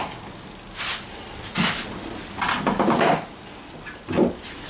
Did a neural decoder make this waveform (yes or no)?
no